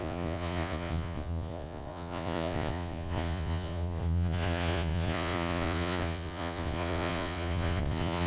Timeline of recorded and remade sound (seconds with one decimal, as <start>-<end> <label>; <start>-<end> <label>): 0.0-8.3 remade